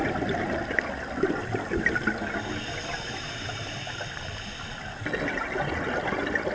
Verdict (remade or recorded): recorded